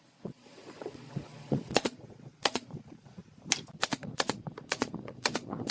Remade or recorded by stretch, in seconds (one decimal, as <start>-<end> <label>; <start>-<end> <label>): 0.0-3.2 remade; 3.2-3.9 recorded; 3.9-5.7 remade